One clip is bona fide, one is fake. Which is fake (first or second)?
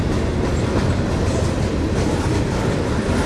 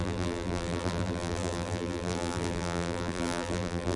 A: second